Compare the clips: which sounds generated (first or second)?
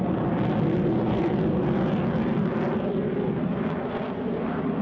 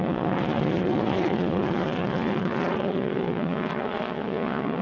second